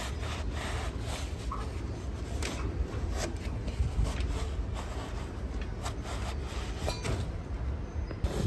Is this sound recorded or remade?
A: recorded